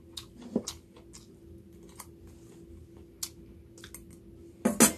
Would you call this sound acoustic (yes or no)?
yes